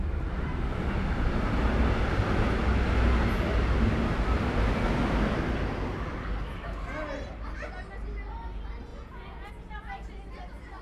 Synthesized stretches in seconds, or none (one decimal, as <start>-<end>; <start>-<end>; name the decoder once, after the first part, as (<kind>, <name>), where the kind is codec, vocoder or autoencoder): 8.9-9.5 (vocoder, Vocos)